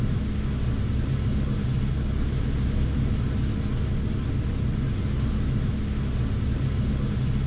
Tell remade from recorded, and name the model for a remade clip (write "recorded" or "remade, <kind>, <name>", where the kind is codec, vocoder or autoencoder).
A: recorded